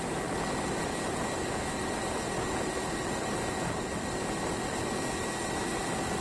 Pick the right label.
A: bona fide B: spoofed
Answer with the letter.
A